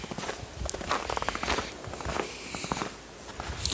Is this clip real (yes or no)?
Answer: yes